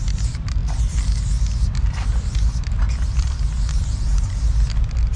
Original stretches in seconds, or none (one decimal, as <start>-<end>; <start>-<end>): 0.0-5.2